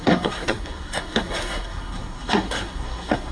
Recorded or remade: remade